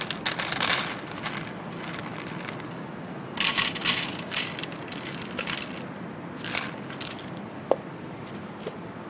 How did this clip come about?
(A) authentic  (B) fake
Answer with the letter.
A